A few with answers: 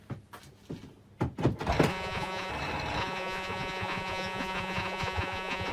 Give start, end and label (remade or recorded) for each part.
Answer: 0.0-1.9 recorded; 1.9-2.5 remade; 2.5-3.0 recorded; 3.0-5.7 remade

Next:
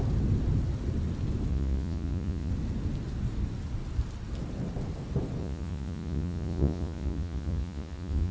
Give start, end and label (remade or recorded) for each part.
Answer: 0.0-1.5 recorded; 1.5-2.5 remade; 2.5-5.4 recorded; 5.4-8.3 remade